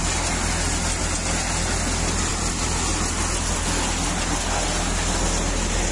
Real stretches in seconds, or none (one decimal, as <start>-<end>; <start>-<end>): 0.0-5.9